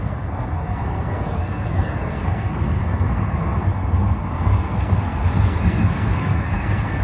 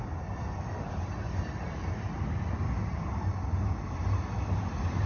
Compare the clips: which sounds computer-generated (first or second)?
first